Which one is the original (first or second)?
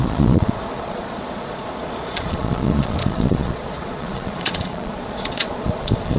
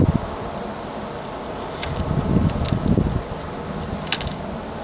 second